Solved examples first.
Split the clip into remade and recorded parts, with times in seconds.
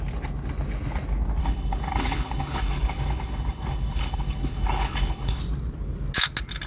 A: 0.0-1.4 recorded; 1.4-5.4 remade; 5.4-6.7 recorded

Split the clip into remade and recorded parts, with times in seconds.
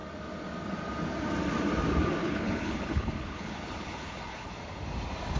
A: 0.0-2.2 recorded; 2.2-4.5 remade; 4.5-5.4 recorded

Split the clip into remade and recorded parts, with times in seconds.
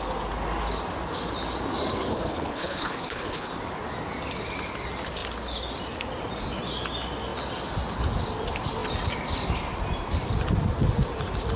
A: 0.0-2.1 recorded; 2.1-3.5 remade; 3.5-11.6 recorded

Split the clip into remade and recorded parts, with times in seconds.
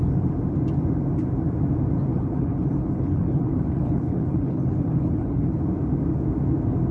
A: 0.0-2.1 recorded; 2.1-5.6 remade; 5.6-6.9 recorded